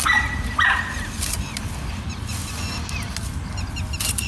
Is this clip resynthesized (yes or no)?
no